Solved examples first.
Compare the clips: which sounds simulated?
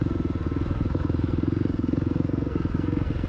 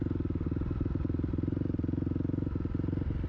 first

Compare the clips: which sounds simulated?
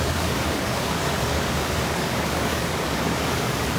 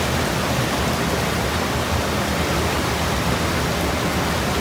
first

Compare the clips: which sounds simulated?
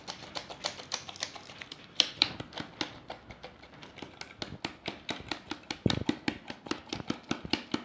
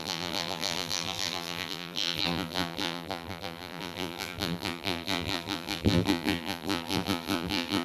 second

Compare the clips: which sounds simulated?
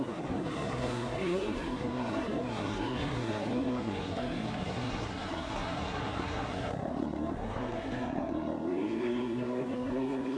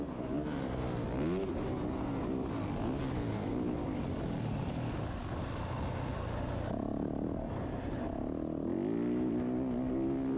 first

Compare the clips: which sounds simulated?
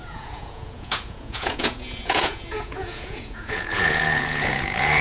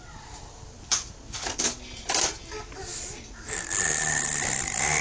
first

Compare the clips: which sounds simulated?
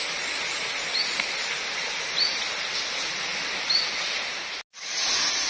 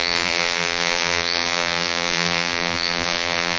second